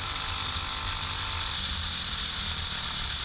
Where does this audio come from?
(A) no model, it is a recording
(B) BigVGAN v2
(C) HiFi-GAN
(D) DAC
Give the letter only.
A